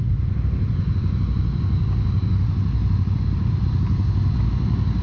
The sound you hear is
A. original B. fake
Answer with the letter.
A